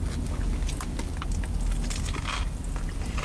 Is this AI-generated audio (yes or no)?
no